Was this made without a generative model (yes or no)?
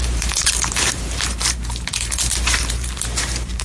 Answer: no